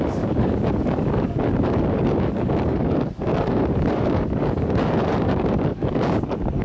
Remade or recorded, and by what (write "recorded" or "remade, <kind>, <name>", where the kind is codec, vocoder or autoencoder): remade, codec, DAC